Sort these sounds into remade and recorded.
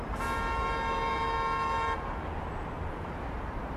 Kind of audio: recorded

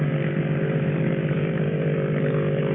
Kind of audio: remade